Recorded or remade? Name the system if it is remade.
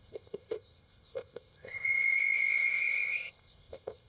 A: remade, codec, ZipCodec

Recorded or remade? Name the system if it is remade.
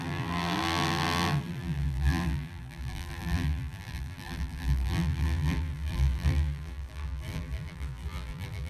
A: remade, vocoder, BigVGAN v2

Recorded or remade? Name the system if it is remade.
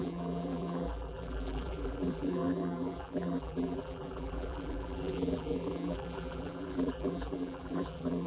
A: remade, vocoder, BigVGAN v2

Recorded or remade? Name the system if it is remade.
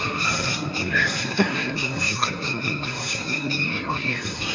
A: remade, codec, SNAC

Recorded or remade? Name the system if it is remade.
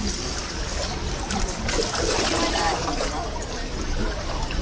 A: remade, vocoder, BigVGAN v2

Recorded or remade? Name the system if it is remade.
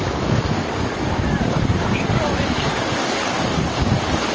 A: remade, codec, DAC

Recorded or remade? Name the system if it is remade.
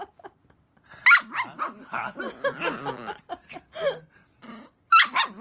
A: recorded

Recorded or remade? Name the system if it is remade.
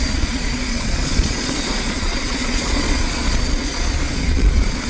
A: remade, vocoder, Vocos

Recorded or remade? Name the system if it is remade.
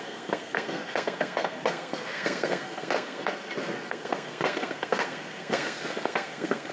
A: remade, codec, SNAC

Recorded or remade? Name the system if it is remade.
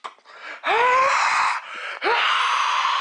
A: recorded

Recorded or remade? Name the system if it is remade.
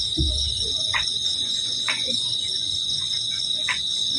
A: remade, vocoder, Vocos